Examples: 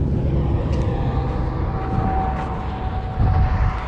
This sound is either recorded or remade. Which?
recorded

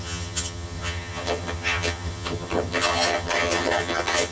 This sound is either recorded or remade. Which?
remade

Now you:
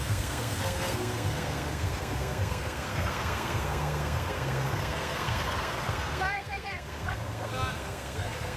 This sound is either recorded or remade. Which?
remade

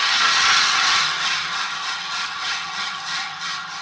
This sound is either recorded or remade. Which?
remade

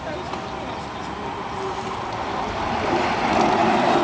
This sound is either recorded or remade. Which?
recorded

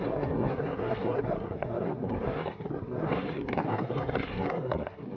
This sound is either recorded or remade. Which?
remade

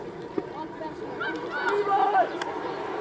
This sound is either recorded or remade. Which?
recorded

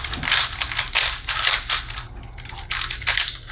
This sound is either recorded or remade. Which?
recorded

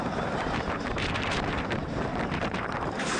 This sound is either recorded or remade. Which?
remade